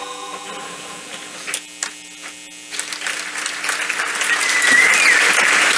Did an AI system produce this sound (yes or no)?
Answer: no